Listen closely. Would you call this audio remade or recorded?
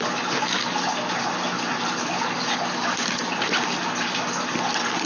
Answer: recorded